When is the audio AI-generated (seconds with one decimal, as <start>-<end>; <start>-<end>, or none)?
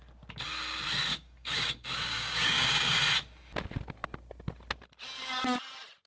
1.1-3.0